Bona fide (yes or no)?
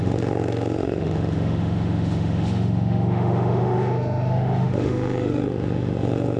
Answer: no